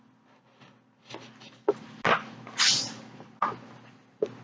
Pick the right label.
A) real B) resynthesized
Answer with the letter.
A